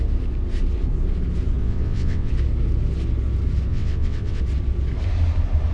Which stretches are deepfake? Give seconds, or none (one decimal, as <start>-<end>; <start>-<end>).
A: 1.6-2.3; 3.7-4.4